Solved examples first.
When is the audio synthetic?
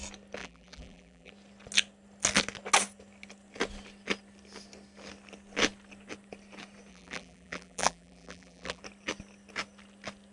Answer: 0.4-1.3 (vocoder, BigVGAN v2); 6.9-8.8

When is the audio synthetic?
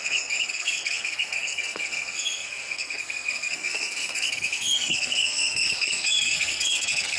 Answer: 0.0-7.2 (codec, SNAC)